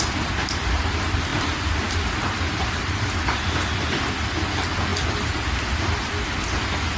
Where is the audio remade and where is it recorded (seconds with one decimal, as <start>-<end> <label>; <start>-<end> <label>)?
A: 0.0-1.3 recorded; 1.3-4.1 remade; 4.1-7.0 recorded